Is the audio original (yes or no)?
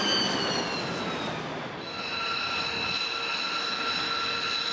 yes